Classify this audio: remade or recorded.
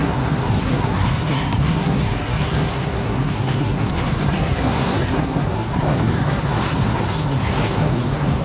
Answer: remade